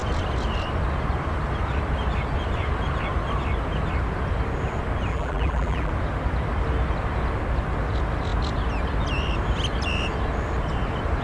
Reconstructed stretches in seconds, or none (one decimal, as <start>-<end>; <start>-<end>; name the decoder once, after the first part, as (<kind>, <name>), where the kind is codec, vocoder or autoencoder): 5.1-5.9 (vocoder, BigVGAN v2)